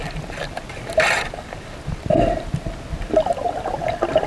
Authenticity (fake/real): real